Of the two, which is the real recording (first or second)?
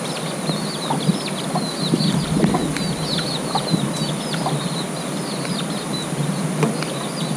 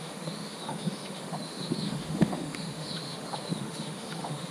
first